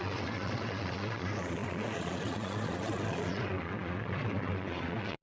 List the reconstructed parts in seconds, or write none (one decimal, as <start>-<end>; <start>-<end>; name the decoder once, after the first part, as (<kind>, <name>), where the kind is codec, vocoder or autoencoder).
0.0-5.2 (vocoder, Vocos)